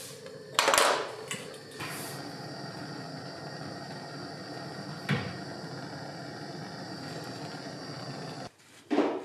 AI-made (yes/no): no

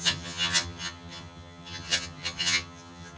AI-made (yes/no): yes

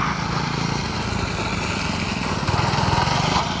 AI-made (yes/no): no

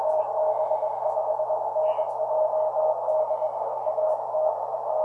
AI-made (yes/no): no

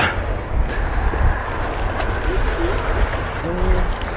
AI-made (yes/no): no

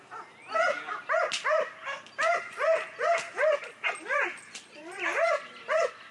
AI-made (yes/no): no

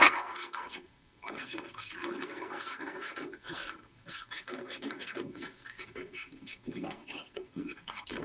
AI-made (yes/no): yes